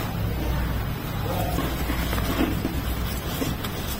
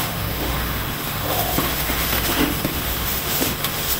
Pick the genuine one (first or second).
first